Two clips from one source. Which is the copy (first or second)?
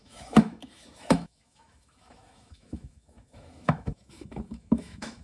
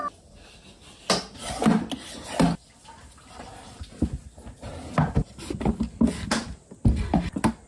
first